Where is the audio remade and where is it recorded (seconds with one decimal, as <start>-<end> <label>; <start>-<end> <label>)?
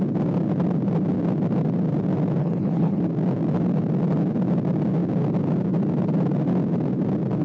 0.0-2.4 recorded; 2.4-3.0 remade; 3.0-7.4 recorded